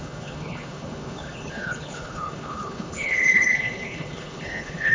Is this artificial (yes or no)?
yes